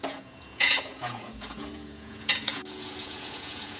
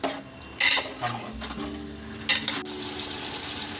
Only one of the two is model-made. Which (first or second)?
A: first